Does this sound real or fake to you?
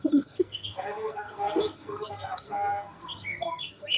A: fake